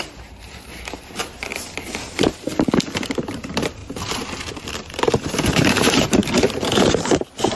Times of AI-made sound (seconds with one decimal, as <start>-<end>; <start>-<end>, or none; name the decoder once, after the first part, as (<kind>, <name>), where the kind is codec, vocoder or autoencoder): 0.0-1.5 (vocoder, BigVGAN v2); 2.0-2.5; 3.3-3.8; 4.4-7.5